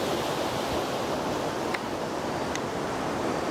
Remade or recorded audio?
recorded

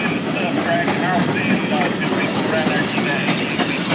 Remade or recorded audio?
recorded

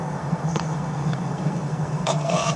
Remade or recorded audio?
remade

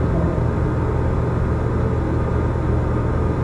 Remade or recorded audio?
recorded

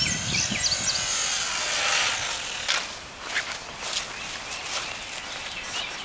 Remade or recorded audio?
recorded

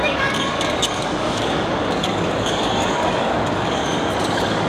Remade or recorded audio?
remade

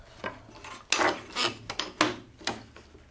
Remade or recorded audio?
recorded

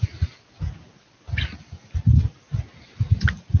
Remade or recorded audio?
recorded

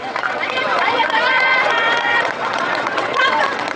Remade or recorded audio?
remade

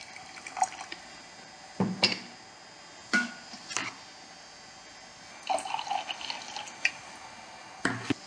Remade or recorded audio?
recorded